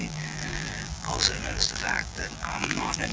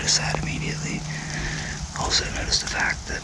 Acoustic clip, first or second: second